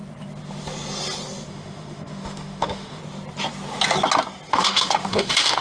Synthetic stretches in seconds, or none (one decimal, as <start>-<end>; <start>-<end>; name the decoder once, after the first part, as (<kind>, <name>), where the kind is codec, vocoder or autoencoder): 1.5-3.0 (autoencoder, DAC-VAE); 4.5-5.6